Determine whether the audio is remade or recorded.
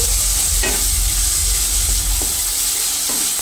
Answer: recorded